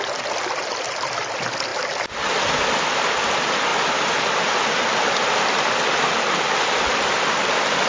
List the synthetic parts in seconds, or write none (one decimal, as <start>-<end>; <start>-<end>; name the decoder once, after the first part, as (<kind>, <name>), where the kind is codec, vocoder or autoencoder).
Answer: 3.7-7.1 (vocoder, BigVGAN v2)

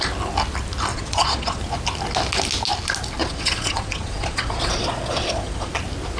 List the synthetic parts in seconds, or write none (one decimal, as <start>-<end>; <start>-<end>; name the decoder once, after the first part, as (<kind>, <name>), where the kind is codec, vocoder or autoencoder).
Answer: 0.9-1.6 (vocoder, Vocos); 3.2-5.7